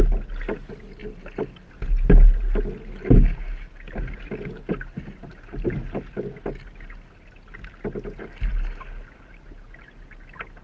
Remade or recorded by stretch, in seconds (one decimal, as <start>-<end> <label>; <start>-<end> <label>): 0.0-10.6 recorded